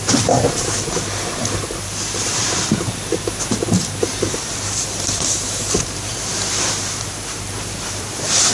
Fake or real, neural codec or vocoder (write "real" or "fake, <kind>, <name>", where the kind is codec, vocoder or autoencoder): fake, vocoder, BigVGAN v2